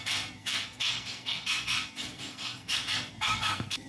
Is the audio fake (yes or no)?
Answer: yes